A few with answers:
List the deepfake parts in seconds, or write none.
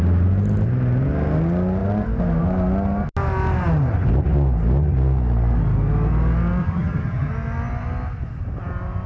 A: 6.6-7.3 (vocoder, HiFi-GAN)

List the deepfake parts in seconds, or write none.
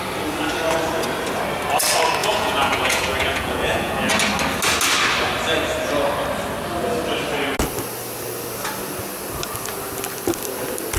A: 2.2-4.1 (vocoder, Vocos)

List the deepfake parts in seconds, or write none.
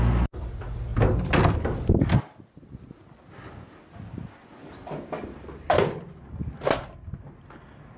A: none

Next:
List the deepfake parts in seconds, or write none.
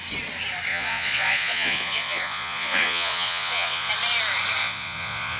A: 0.7-3.9 (vocoder, Vocos); 4.6-5.4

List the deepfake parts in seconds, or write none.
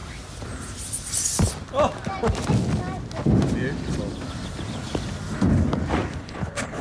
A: 6.2-6.8 (codec, HILCodec)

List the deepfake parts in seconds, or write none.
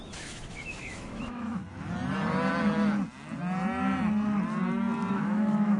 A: 0.0-1.6 (autoencoder, DAC-VAE); 5.1-5.8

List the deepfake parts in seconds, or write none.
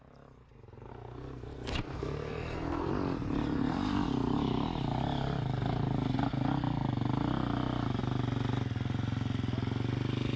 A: 0.9-2.9 (codec, SNAC)